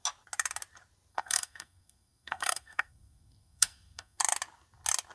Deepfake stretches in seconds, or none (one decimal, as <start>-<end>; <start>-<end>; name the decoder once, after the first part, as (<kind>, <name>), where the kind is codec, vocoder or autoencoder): 1.1-4.2 (codec, SNAC)

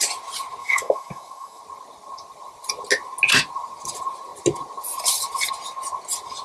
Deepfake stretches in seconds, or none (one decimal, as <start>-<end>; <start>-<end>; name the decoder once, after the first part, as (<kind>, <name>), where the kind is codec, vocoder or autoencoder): 0.6-1.6 (autoencoder, DAC-VAE)

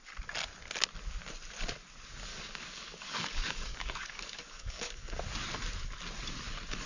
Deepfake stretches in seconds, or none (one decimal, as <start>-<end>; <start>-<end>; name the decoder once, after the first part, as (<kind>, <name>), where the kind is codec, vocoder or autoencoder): 2.3-5.2 (codec, DAC)

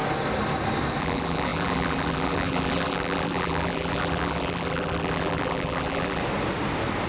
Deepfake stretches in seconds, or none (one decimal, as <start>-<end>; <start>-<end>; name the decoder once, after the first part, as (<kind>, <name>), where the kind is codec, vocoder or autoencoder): 1.0-6.2 (vocoder, BigVGAN v2)

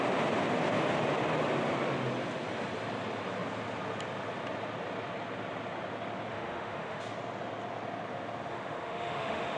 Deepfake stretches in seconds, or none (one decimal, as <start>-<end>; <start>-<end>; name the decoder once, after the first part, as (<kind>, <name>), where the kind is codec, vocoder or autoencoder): 6.3-7.0 (autoencoder, DAC-VAE); 8.5-9.6

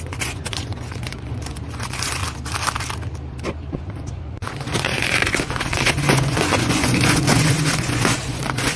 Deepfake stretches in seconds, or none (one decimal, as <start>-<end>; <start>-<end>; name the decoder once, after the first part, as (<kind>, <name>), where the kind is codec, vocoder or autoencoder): 0.0-2.2 (vocoder, Vocos); 3.7-8.8

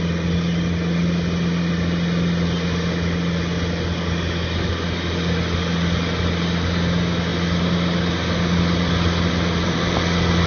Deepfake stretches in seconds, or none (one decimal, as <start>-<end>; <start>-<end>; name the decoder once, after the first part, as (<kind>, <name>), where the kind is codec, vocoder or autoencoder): none